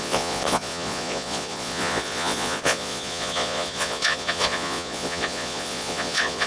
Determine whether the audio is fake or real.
fake